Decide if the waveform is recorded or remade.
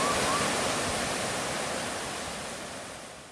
recorded